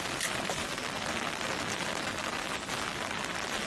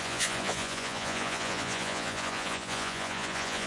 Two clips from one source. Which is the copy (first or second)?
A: second